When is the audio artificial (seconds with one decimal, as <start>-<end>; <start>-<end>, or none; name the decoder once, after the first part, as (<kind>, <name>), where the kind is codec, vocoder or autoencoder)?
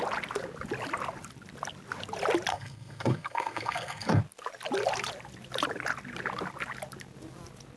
2.5-4.2 (codec, SNAC)